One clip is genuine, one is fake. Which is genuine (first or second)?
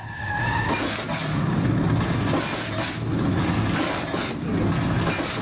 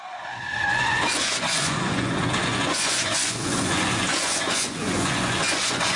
first